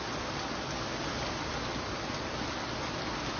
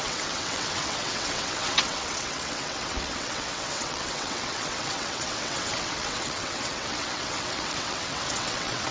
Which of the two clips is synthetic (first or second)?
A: second